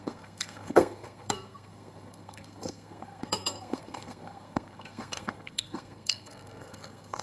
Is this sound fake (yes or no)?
yes